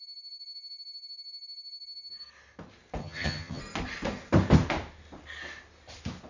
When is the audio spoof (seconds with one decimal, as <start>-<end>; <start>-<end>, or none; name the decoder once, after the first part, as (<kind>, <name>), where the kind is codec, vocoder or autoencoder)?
3.0-3.6 (vocoder, HiFi-GAN)